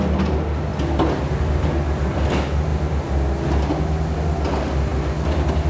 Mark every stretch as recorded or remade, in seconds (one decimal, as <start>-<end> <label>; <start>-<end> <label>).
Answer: 0.0-5.7 recorded